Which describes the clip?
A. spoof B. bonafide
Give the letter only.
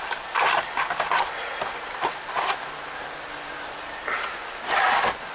B